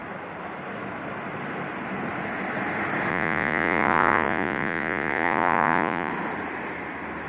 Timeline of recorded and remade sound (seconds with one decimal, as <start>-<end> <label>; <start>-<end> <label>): 0.0-3.1 recorded; 3.1-6.1 remade; 6.1-7.3 recorded